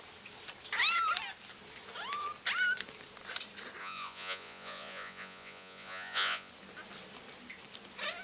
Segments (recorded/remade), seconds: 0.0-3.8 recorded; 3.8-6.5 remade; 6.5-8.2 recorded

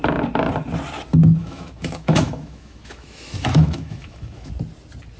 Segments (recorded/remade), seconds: 0.0-1.4 recorded; 1.4-4.5 remade; 4.5-5.2 recorded

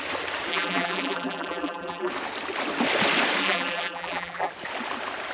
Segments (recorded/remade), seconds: 0.0-0.5 recorded; 0.5-2.1 remade; 2.1-3.4 recorded; 3.4-4.5 remade; 4.5-5.3 recorded

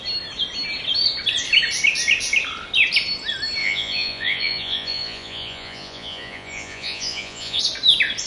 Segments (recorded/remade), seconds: 0.0-3.6 recorded; 3.6-7.6 remade; 7.6-8.3 recorded